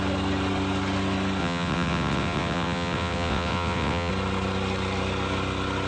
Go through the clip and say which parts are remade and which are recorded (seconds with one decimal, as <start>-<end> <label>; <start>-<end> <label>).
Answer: 0.0-1.4 recorded; 1.4-4.1 remade; 4.1-5.9 recorded